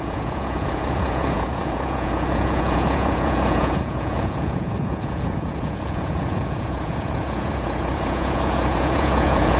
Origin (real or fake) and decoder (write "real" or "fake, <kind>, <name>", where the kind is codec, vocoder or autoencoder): fake, vocoder, Vocos